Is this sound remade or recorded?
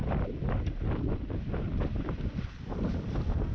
recorded